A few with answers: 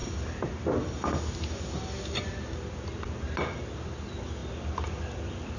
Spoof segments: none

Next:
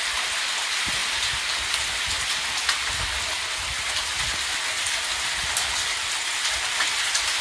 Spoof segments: none

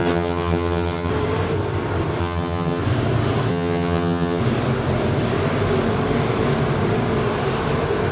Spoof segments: 0.0-1.1 (vocoder, HiFi-GAN); 2.2-2.8; 3.5-4.4